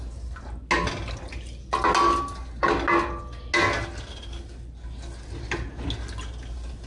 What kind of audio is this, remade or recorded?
recorded